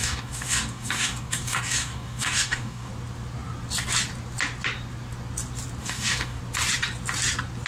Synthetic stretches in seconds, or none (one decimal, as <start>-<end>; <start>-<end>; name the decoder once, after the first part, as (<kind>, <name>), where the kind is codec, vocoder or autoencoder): 0.0-2.9 (codec, DAC); 5.8-6.4

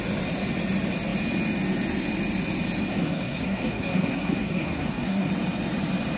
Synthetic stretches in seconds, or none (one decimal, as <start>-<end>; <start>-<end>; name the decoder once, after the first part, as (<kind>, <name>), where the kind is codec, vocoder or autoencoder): 2.9-5.3 (codec, SNAC)

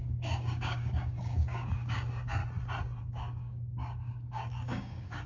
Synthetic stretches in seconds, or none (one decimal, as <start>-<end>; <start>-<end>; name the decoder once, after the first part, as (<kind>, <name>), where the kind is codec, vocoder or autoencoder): 0.0-2.4 (codec, DAC); 3.0-5.3

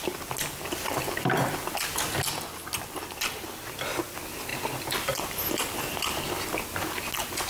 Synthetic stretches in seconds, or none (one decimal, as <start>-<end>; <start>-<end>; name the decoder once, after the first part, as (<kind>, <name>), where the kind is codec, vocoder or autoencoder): none